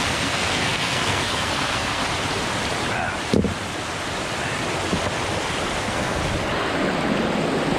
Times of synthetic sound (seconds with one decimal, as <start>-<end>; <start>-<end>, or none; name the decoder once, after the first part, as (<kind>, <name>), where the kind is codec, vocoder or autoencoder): 0.0-2.0 (codec, SNAC); 5.8-6.2